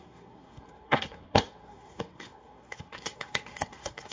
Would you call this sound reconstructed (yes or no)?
yes